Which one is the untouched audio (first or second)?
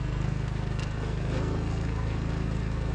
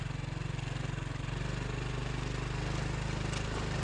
second